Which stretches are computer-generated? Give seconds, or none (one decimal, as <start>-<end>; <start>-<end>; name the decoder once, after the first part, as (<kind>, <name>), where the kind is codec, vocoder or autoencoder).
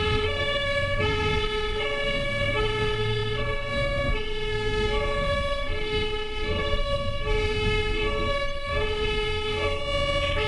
0.0-9.8 (codec, SNAC)